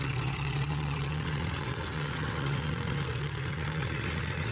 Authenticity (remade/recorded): remade